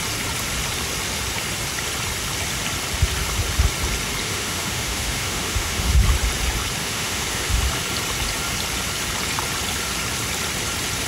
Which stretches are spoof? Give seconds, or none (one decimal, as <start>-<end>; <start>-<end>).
4.2-5.9; 6.8-7.6